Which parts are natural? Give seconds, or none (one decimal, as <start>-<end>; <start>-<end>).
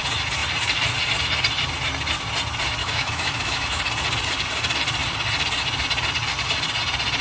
0.0-2.8; 3.8-7.2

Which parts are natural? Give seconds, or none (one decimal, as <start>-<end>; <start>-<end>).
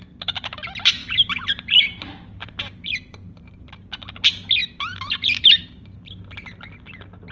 0.0-1.0; 3.7-4.6; 5.6-7.3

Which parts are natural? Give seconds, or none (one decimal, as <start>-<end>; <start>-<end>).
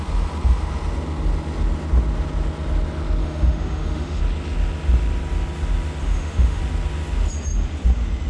0.0-3.2; 4.2-6.0; 6.6-8.3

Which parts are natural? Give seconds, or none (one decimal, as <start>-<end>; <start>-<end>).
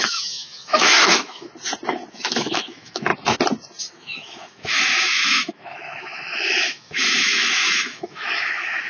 1.5-2.1; 3.1-3.8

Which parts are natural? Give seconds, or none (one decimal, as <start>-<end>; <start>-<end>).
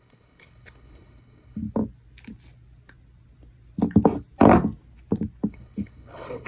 1.6-5.5